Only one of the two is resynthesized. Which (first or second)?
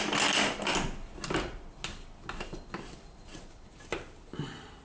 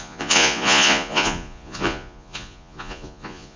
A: second